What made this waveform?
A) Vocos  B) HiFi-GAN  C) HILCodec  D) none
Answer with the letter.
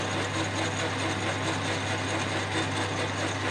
D